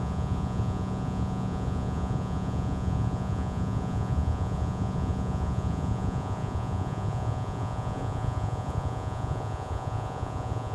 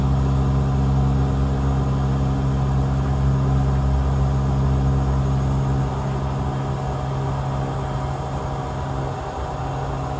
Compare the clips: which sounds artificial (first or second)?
first